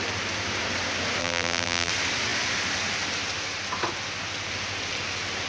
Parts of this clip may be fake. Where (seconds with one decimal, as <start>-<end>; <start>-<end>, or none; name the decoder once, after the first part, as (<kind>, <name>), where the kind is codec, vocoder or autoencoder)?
1.2-1.9 (vocoder, BigVGAN v2)